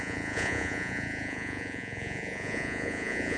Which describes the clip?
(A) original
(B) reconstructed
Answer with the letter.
B